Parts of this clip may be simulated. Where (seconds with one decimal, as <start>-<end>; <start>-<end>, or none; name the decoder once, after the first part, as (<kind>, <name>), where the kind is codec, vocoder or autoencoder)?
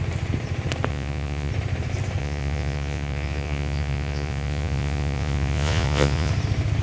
0.9-1.5 (vocoder, Vocos); 2.2-6.3